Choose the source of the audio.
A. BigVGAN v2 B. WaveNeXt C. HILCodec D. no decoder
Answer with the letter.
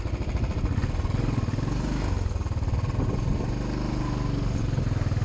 D